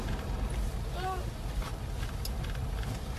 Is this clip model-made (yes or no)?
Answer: yes